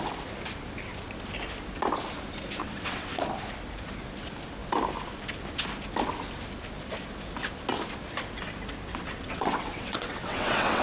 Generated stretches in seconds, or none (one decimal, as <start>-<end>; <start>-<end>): 2.6-3.2; 8.9-10.8